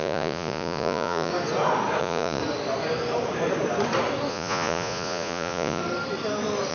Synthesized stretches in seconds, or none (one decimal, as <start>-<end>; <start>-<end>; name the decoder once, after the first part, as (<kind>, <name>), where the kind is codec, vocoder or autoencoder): 0.0-1.3 (vocoder, Vocos); 2.0-2.4; 4.3-5.8